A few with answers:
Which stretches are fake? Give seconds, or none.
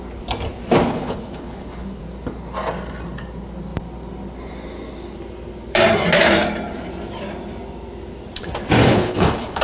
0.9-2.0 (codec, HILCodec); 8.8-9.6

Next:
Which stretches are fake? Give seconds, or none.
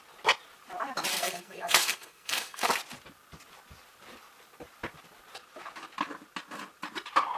1.1-2.7 (codec, SNAC)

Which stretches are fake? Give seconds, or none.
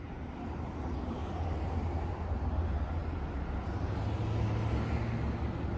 none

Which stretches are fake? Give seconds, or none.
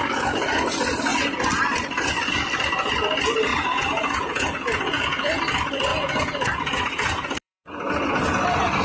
3.5-5.4 (vocoder, Vocos); 5.9-7.9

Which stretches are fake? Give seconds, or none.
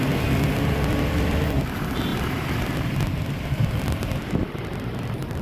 2.1-5.4 (vocoder, BigVGAN v2)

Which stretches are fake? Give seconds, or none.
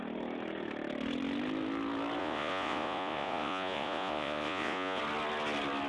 2.2-5.0 (vocoder, Vocos)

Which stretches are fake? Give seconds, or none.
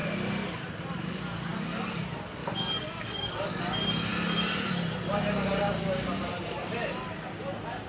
2.4-3.6 (codec, DAC)